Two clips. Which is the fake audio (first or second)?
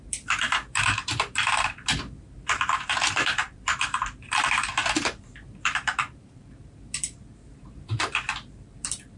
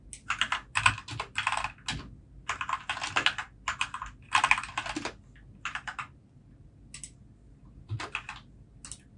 first